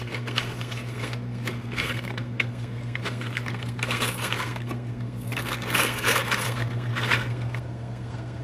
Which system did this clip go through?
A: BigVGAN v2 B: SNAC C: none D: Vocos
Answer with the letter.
B